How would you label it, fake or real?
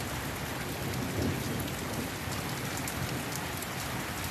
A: real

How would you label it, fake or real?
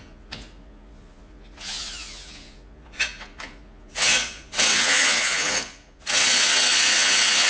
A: fake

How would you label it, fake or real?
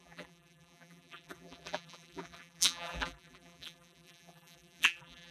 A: fake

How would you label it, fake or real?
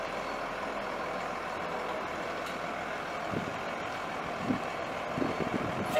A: real